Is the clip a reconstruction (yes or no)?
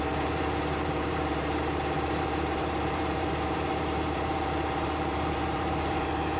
yes